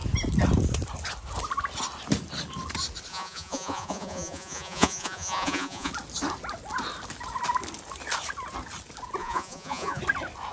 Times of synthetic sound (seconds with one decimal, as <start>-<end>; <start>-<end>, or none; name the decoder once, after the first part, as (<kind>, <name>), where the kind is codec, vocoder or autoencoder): 3.1-5.9 (vocoder, Vocos); 9.2-10.0